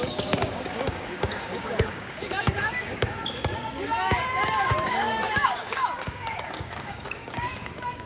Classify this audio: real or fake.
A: fake